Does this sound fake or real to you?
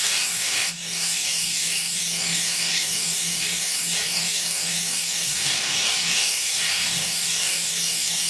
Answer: fake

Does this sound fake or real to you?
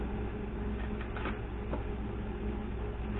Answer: real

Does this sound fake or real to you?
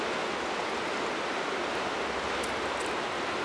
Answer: real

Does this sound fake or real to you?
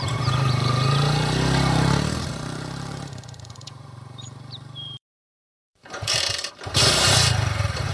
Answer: fake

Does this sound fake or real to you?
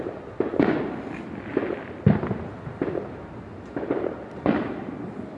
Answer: real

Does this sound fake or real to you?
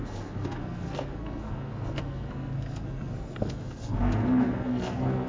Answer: fake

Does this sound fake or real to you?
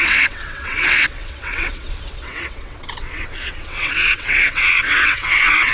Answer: fake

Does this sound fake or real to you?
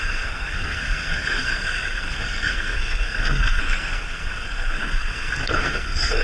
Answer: fake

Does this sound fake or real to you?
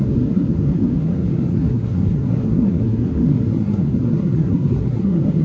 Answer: fake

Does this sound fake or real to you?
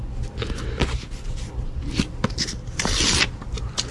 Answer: real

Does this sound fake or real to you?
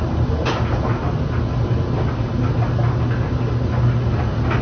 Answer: real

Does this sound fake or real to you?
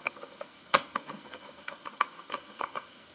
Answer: fake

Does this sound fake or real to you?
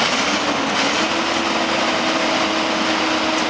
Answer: real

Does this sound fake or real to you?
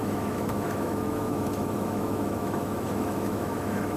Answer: fake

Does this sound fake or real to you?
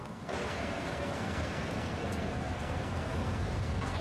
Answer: fake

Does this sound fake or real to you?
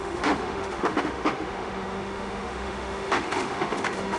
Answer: fake